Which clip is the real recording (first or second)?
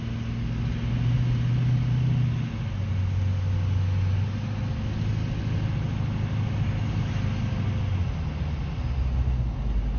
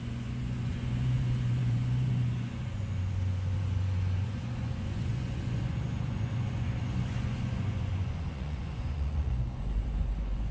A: first